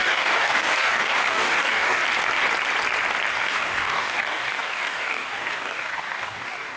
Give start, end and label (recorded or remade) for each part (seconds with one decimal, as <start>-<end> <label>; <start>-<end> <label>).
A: 0.0-2.0 remade; 2.0-3.3 recorded; 3.3-6.8 remade